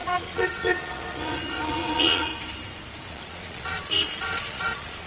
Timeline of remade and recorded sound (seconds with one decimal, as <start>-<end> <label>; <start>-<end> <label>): 0.0-2.3 remade; 2.3-3.1 recorded; 3.1-5.1 remade